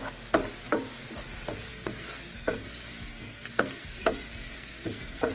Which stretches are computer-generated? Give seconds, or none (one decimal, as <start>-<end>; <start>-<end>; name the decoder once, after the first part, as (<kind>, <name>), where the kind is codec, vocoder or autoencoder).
1.7-5.3 (codec, SNAC)

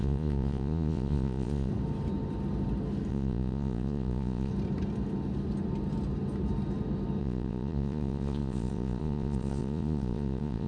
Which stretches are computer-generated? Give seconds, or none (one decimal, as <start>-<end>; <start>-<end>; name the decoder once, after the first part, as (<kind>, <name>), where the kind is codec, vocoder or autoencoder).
0.0-1.7 (vocoder, Vocos); 3.1-4.5; 7.2-10.7

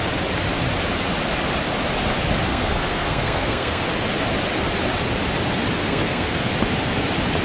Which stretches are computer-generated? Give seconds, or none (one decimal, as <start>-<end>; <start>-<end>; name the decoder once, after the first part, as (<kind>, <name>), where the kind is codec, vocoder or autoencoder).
2.5-3.8 (codec, SNAC); 5.8-6.5

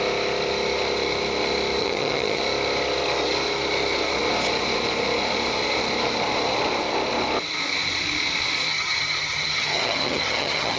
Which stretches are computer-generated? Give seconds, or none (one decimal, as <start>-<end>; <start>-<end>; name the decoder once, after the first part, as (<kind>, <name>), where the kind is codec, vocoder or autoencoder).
1.8-2.4 (vocoder, HiFi-GAN); 8.7-10.8